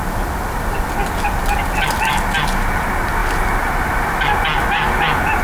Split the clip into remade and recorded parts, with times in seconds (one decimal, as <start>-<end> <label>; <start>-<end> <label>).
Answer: 0.0-5.4 recorded

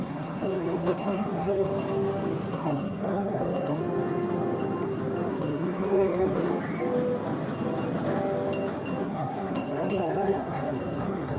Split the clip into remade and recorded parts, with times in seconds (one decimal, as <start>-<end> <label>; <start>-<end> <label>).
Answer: 0.0-1.7 remade; 1.7-2.5 recorded; 2.5-3.8 remade; 3.8-5.3 recorded; 5.3-6.5 remade; 6.5-9.0 recorded; 9.0-11.4 remade